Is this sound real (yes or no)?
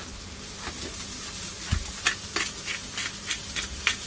yes